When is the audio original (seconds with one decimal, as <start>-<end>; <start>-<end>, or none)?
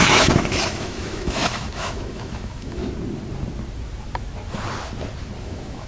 2.8-5.4